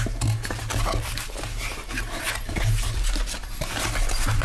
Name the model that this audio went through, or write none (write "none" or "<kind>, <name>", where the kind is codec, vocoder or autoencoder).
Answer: none